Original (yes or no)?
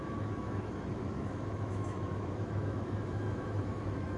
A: no